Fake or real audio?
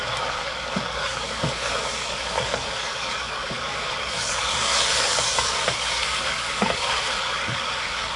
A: fake